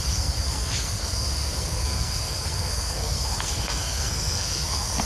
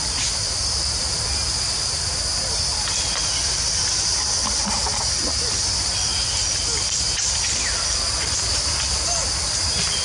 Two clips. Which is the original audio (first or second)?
second